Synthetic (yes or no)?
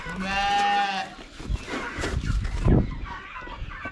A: no